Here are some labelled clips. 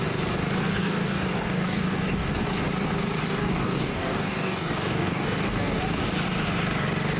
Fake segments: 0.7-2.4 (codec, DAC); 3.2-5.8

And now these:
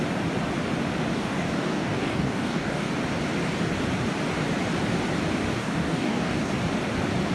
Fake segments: 1.1-2.9 (codec, DAC); 5.6-6.5

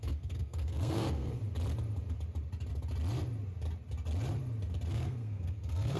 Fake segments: 0.0-1.4 (codec, SNAC); 4.9-6.0

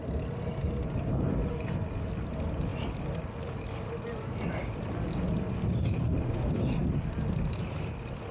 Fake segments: none

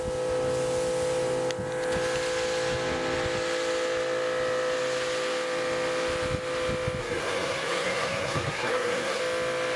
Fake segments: 7.0-9.2 (codec, SNAC)

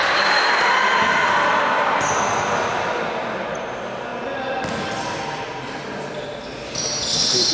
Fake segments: none